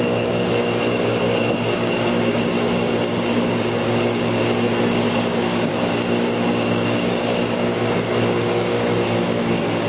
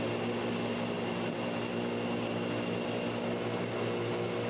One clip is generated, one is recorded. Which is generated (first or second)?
first